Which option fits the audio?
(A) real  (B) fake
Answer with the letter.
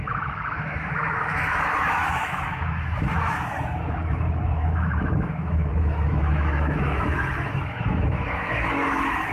B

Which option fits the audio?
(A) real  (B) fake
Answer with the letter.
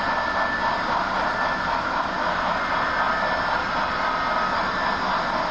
A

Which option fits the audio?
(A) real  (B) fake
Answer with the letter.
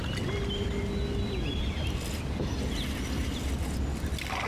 A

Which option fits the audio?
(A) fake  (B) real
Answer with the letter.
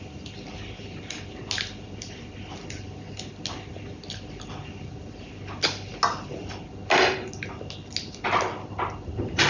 B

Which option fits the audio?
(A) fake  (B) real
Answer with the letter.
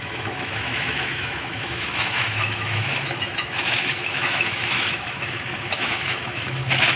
A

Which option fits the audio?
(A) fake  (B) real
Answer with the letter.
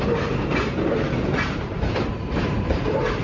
A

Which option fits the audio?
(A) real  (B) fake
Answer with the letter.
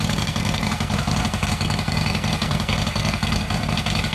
B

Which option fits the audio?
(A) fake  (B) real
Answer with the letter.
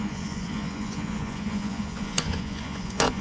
A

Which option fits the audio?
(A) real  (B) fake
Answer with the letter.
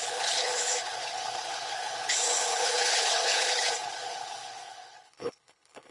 B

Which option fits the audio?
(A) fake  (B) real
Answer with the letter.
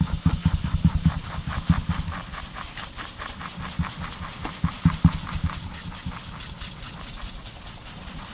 B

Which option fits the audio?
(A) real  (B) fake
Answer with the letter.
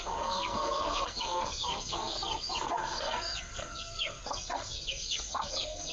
B